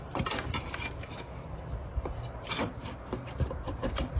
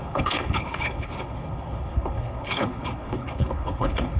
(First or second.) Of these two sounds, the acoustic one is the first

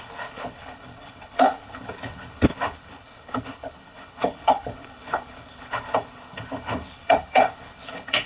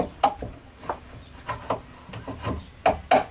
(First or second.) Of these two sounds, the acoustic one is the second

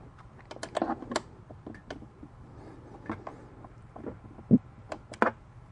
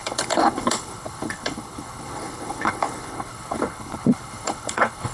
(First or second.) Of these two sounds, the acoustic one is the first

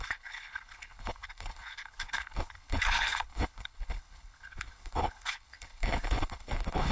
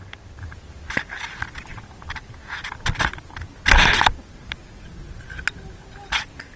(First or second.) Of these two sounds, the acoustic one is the second